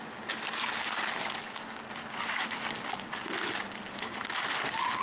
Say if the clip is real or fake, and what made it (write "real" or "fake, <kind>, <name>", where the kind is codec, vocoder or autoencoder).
real